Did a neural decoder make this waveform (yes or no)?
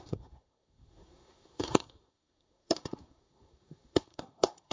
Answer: yes